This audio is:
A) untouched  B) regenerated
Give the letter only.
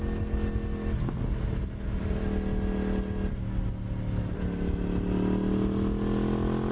A